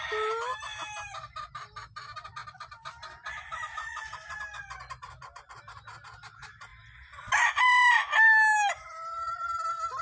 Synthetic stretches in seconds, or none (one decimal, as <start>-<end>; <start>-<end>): none